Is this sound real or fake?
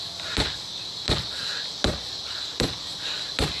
real